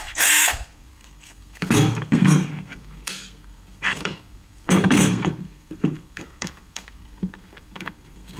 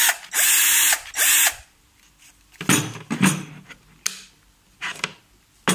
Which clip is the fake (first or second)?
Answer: first